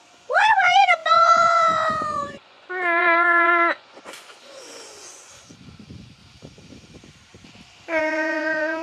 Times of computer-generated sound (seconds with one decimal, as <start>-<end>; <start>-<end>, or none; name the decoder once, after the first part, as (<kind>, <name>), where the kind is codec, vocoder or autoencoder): 0.0-6.2 (vocoder, Vocos); 8.0-8.8